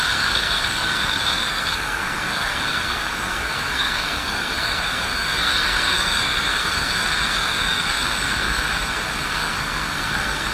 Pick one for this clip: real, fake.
fake